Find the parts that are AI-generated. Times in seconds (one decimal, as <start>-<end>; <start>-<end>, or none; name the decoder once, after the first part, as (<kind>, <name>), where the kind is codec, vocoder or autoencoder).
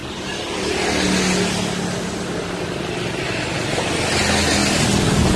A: none